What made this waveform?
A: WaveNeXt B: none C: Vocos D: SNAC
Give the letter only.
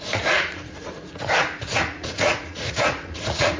C